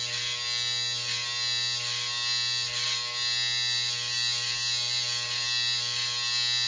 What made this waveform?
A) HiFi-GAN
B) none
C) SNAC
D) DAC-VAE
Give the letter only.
B